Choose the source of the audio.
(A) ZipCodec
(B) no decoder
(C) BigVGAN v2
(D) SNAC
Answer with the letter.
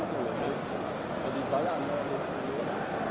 B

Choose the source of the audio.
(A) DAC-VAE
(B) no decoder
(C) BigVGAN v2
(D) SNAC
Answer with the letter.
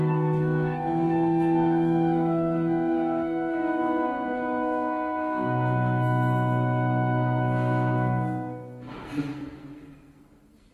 D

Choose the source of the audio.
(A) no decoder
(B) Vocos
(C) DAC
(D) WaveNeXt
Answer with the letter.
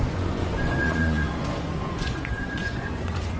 B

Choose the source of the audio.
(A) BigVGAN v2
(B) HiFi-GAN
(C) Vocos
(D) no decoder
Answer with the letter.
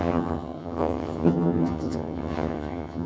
B